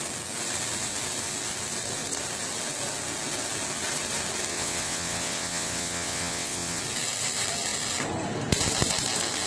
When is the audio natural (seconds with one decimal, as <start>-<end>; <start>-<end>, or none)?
0.0-4.5; 6.8-9.5